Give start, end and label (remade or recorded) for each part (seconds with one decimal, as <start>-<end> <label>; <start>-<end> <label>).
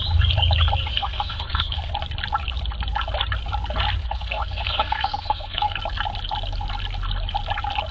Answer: 0.0-0.9 recorded; 0.9-1.9 remade; 1.9-4.0 recorded; 4.0-5.8 remade; 5.8-7.9 recorded